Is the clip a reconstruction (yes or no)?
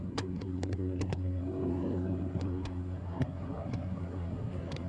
yes